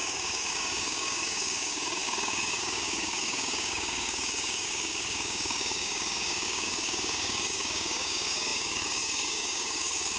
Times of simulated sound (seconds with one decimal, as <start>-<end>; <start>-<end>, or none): 0.0-10.2